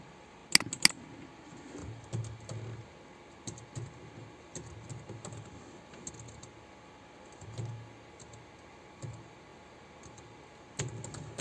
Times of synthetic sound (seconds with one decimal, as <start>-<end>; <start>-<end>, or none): none